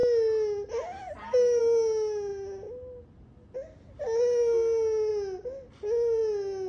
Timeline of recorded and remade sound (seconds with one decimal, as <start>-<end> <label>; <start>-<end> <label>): 0.0-6.7 recorded